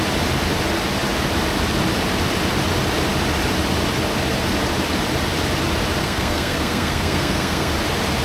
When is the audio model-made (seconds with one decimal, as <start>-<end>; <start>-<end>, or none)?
6.0-7.7